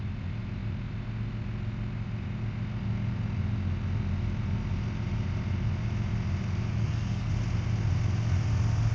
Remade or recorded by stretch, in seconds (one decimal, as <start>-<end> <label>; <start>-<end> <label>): 0.0-6.7 recorded; 6.7-7.3 remade; 7.3-8.9 recorded